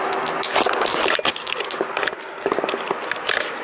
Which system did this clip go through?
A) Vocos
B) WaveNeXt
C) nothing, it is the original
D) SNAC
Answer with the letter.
C